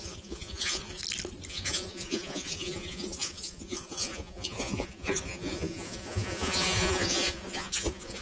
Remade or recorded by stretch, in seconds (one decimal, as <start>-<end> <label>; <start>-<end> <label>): 0.0-1.0 remade; 1.0-1.5 recorded; 1.5-8.2 remade